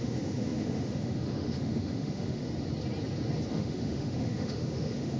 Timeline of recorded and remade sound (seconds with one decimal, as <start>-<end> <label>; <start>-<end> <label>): 0.0-2.4 remade; 2.4-3.5 recorded; 3.5-5.2 remade